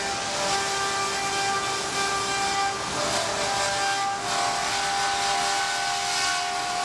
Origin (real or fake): real